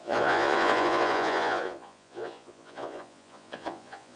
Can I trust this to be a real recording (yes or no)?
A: no